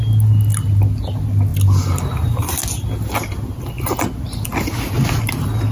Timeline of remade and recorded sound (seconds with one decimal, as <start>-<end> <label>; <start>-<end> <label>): 0.0-5.7 recorded